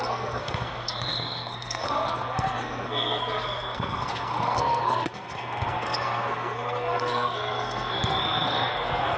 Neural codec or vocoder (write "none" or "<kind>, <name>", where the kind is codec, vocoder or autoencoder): codec, SNAC